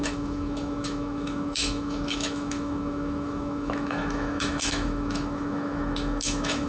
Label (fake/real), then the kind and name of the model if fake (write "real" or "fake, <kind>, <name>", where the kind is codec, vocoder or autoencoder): fake, autoencoder, DAC-VAE